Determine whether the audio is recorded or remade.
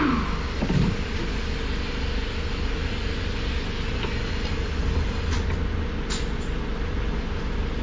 recorded